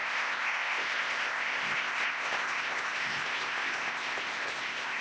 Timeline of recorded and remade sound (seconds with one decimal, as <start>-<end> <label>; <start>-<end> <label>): 0.0-5.0 remade